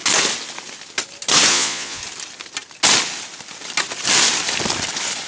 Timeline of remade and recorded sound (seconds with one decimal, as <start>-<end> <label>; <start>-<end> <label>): 0.0-1.5 recorded; 1.5-2.0 remade; 2.0-5.3 recorded

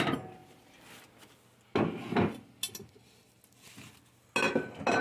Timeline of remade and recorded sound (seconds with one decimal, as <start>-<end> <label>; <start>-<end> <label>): 0.0-5.0 recorded